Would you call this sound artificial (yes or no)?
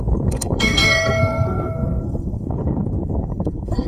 yes